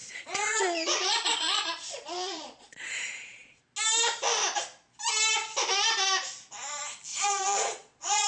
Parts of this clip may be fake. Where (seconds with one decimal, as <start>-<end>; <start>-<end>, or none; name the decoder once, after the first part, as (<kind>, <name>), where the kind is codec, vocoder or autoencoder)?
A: 0.0-3.6 (vocoder, Vocos); 7.1-8.3